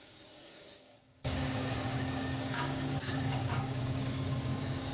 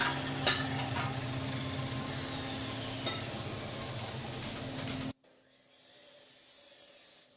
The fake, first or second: first